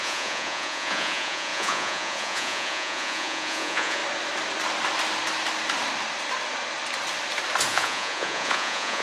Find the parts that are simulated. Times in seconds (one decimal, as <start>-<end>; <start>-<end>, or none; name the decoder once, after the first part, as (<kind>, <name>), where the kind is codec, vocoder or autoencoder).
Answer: 0.0-4.0 (vocoder, Vocos); 7.7-9.0